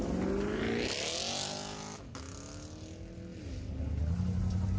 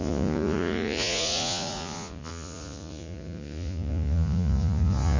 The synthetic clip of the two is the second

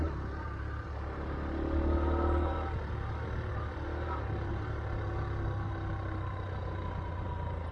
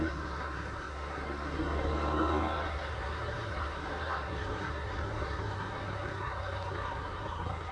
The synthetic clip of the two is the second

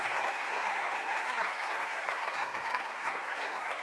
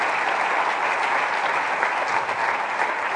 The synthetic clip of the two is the first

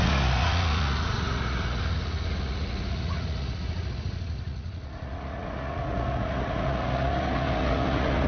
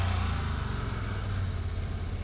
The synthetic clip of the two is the first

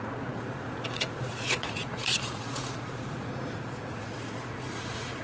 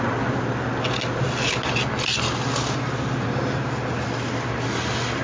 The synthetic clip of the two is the first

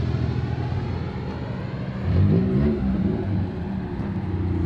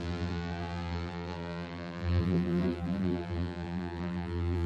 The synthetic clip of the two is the second